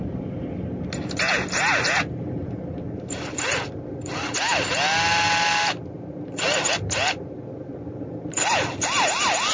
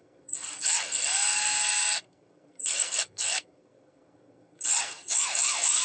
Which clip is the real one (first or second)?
first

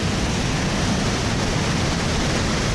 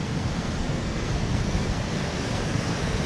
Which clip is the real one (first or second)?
first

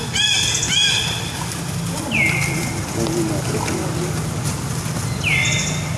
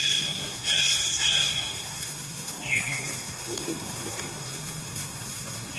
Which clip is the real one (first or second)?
first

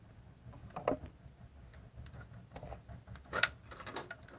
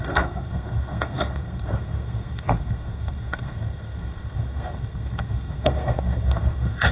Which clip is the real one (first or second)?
first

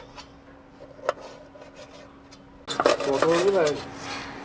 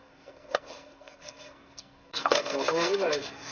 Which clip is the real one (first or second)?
first